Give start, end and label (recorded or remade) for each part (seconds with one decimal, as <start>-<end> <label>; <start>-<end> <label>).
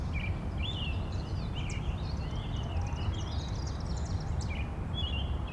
0.0-5.5 recorded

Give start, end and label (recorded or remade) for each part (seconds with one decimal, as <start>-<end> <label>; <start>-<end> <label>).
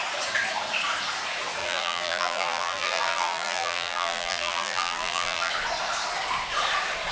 0.0-1.6 recorded; 1.6-5.5 remade; 5.5-7.1 recorded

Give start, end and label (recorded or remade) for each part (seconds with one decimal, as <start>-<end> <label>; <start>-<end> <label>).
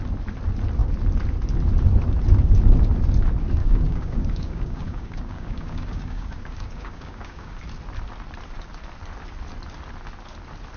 0.0-3.6 recorded; 3.6-7.6 remade; 7.6-10.8 recorded